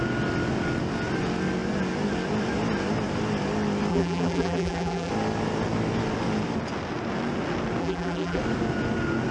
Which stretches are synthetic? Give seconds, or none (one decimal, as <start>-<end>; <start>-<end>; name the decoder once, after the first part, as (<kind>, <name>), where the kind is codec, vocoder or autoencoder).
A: 3.9-5.1 (vocoder, BigVGAN v2); 7.8-8.4